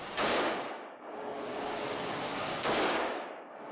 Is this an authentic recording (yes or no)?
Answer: no